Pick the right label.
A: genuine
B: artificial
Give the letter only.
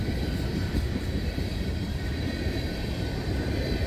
B